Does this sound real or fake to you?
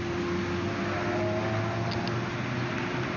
real